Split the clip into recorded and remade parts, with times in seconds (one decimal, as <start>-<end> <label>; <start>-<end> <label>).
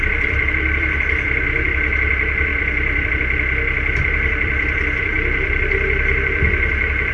0.0-7.1 remade